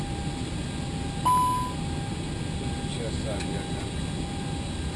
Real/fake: real